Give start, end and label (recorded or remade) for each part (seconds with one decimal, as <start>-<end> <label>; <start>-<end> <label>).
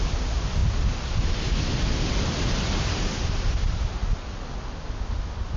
0.0-5.6 recorded